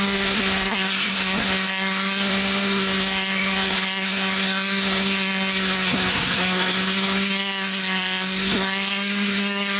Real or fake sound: fake